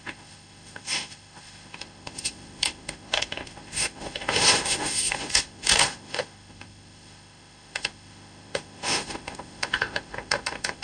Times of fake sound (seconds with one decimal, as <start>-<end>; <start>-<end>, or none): 0.0-10.8